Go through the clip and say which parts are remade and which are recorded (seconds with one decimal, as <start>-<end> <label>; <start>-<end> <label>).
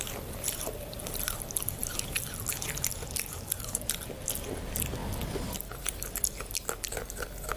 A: 0.0-7.6 recorded